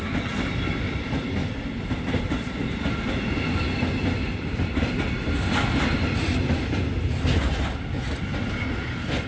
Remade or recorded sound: recorded